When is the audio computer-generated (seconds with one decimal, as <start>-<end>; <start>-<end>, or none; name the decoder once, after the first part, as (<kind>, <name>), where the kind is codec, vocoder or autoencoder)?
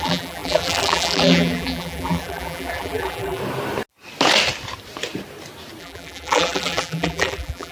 0.0-3.4 (vocoder, BigVGAN v2); 5.8-7.7